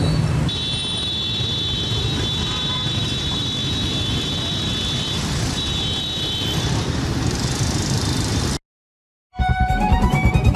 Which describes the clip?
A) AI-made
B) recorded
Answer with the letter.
B